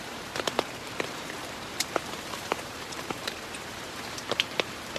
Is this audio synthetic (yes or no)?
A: yes